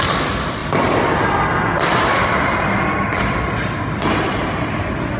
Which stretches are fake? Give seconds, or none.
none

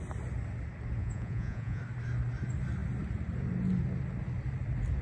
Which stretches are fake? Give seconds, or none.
1.0-1.8

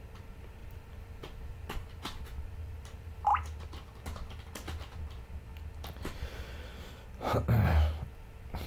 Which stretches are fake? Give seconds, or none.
0.0-3.3; 8.1-8.7

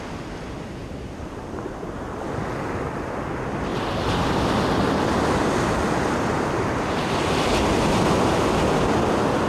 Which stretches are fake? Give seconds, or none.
none

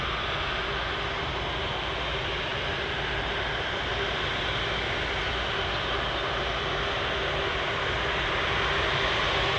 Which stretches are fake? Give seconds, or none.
none

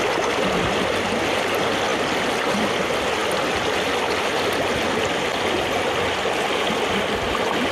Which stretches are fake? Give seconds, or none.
none

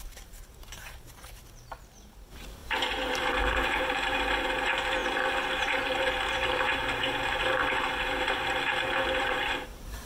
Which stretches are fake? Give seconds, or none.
0.0-5.0; 5.6-10.1